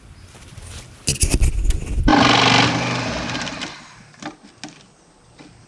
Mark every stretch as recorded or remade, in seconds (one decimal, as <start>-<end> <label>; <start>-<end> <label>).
0.0-5.7 recorded